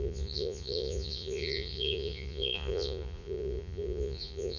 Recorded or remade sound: remade